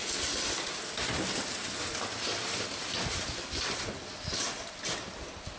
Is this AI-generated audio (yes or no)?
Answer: no